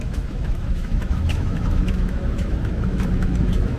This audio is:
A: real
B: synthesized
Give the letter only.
B